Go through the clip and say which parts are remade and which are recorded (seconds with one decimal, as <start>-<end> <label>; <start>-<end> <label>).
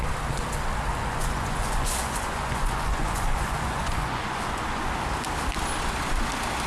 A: 0.0-0.9 recorded; 0.9-4.9 remade; 4.9-6.7 recorded